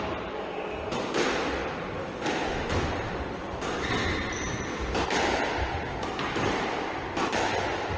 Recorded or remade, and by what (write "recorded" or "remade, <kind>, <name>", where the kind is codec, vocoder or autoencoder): recorded